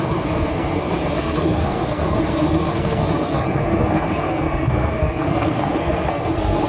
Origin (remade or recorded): remade